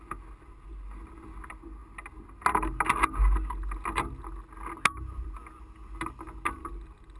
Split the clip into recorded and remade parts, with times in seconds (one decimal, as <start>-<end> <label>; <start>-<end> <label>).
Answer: 0.0-7.2 recorded